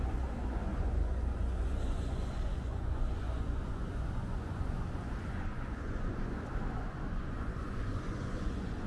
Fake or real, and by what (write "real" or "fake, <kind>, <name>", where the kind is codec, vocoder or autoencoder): fake, vocoder, Vocos